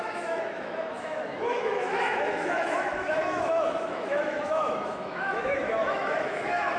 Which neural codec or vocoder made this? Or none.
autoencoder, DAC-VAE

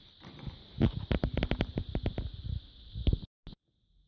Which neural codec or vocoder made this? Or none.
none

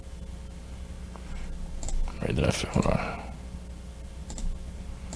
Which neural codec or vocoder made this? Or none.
none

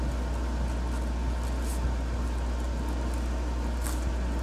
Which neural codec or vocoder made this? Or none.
none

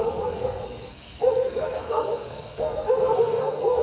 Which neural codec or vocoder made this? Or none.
codec, SNAC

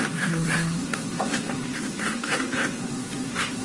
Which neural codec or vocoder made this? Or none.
codec, SNAC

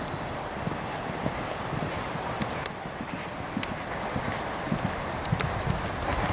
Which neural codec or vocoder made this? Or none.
none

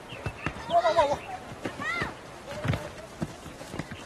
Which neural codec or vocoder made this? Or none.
vocoder, BigVGAN v2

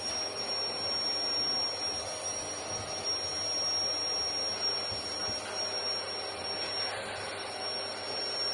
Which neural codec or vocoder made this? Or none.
none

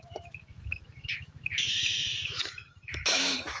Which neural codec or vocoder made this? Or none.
autoencoder, DAC-VAE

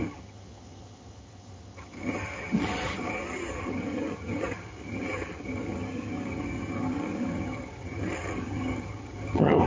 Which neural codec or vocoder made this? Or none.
vocoder, HiFi-GAN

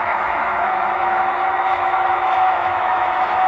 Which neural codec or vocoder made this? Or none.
autoencoder, DAC-VAE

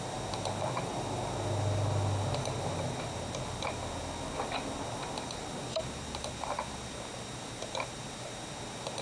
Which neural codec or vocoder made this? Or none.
none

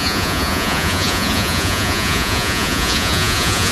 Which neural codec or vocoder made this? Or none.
vocoder, Vocos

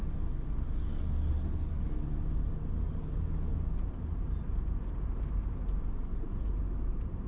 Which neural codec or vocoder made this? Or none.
none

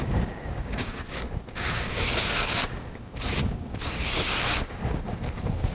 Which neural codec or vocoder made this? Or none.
codec, DAC